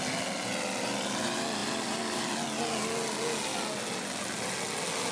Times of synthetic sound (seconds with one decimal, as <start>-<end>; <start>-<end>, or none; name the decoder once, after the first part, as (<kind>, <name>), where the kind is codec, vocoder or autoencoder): 1.6-2.2 (vocoder, BigVGAN v2)